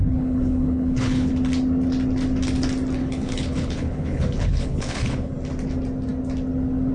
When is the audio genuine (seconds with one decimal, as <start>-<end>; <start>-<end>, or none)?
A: 1.3-3.0; 5.3-6.9